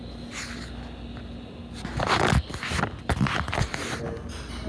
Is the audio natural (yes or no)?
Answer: yes